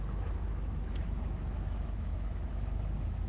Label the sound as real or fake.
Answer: fake